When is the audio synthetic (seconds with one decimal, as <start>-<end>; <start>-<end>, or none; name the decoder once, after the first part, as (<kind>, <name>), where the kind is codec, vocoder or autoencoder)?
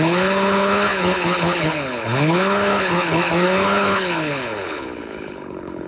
0.0-5.9 (codec, HILCodec)